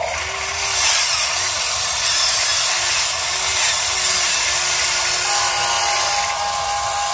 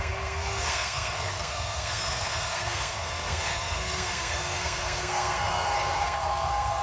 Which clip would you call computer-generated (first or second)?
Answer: second